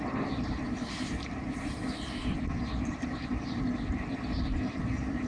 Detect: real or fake fake